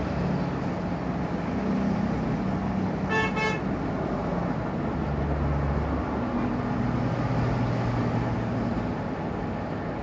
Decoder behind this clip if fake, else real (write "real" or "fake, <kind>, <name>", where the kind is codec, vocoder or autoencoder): real